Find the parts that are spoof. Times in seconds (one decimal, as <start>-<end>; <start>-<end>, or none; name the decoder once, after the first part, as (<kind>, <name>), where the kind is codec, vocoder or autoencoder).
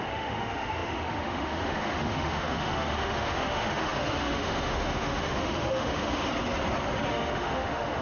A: 0.0-6.2 (autoencoder, DAC-VAE); 7.1-8.0